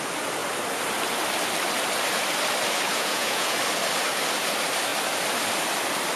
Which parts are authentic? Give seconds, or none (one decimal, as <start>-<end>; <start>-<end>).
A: 0.0-2.9; 3.6-6.2